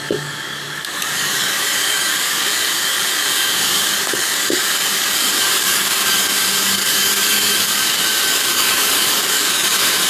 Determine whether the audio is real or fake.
fake